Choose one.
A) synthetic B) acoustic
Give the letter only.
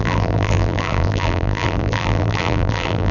A